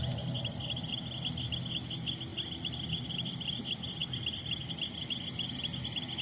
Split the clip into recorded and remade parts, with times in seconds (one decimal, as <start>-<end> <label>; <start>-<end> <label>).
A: 0.0-2.3 recorded; 2.3-3.6 remade; 3.6-4.0 recorded; 4.0-4.6 remade; 4.6-6.2 recorded